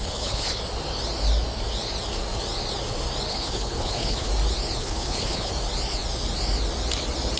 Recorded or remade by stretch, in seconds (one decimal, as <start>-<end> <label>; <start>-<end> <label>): 0.0-0.6 remade; 0.6-3.3 recorded; 3.3-4.3 remade; 4.3-4.8 recorded; 4.8-5.5 remade; 5.5-7.4 recorded